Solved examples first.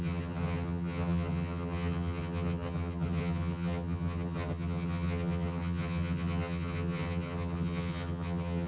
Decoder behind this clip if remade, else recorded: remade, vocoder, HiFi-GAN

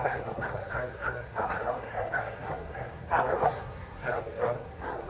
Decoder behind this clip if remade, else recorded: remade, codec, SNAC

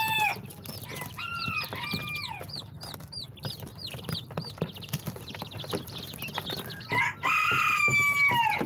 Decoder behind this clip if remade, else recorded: recorded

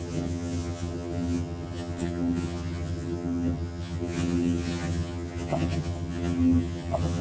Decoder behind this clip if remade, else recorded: remade, vocoder, HiFi-GAN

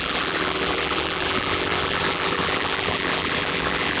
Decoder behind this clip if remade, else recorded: remade, vocoder, BigVGAN v2